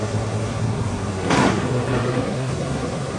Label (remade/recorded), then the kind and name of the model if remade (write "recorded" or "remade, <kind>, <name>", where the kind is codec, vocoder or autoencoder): remade, codec, SNAC